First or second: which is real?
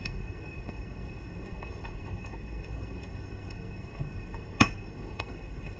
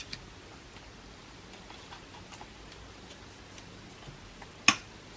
second